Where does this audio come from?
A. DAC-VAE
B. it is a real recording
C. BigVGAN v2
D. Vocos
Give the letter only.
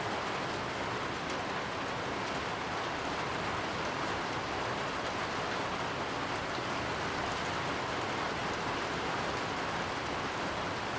B